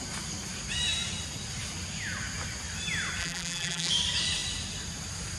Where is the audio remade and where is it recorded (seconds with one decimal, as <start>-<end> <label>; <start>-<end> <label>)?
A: 0.0-3.2 recorded; 3.2-3.9 remade; 3.9-5.4 recorded